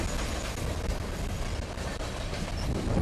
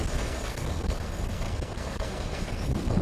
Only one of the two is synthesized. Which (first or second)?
second